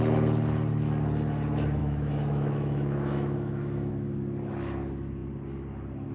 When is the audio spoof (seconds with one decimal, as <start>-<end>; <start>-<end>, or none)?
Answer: 1.8-3.9